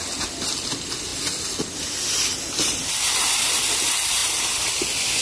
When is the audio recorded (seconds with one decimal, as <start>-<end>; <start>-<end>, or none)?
0.0-5.2